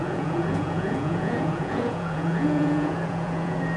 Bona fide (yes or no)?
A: no